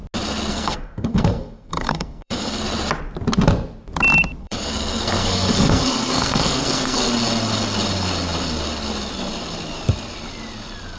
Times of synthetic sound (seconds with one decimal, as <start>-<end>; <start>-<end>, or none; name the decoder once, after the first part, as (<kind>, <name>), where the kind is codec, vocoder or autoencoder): 0.5-2.6 (codec, SNAC); 4.4-7.1